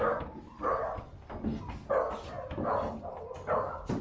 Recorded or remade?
recorded